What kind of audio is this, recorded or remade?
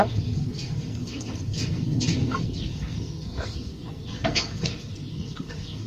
remade